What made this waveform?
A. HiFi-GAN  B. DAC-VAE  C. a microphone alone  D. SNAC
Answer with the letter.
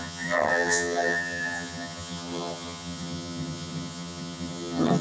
A